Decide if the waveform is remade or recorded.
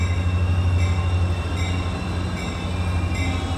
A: recorded